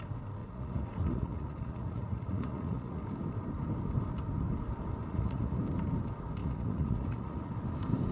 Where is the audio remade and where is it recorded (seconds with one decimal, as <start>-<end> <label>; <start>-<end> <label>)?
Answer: 0.0-0.4 recorded; 0.4-3.0 remade; 3.0-5.1 recorded; 5.1-5.6 remade; 5.6-6.4 recorded; 6.4-7.5 remade; 7.5-8.1 recorded